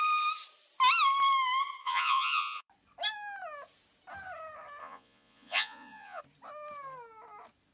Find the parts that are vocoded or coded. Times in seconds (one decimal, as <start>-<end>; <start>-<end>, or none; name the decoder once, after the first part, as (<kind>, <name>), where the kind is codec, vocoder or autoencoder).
1.8-2.7 (vocoder, Vocos); 4.8-6.2

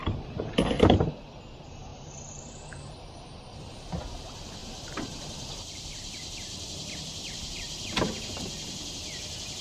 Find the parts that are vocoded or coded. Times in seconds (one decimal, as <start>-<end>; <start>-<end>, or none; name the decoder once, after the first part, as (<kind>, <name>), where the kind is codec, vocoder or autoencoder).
1.9-2.9 (vocoder, BigVGAN v2); 4.6-8.0

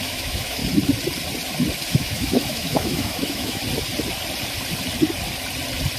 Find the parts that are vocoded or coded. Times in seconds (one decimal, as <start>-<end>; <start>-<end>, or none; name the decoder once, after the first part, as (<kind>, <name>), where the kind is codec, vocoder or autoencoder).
0.0-0.6 (autoencoder, DAC-VAE); 1.9-3.6

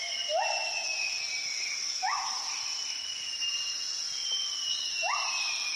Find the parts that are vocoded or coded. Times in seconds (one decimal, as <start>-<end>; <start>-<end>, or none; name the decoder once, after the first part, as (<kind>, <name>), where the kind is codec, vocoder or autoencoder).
none